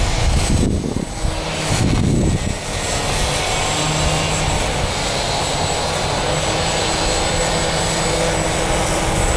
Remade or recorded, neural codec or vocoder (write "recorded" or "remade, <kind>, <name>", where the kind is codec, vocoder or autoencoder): recorded